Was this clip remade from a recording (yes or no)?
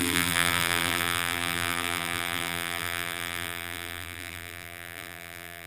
yes